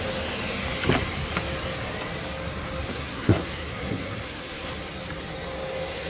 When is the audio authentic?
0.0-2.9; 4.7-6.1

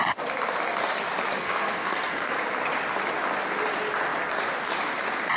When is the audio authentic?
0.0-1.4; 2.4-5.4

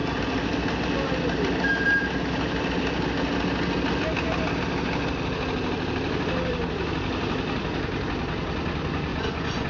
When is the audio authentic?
0.0-9.1